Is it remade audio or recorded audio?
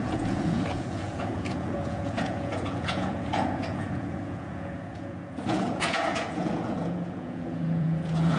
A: remade